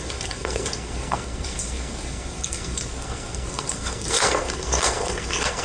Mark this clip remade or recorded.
remade